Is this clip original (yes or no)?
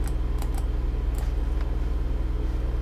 yes